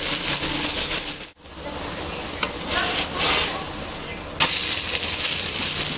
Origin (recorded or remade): recorded